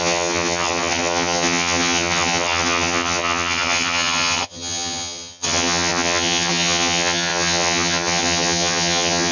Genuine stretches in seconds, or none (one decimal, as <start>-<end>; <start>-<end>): none